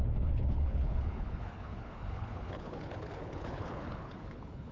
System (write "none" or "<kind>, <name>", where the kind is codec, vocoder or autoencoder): codec, HILCodec